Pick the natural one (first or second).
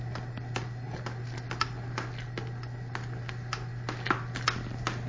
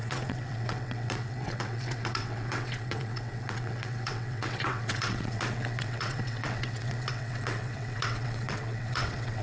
first